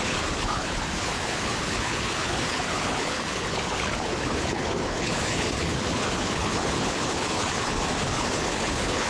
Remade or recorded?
remade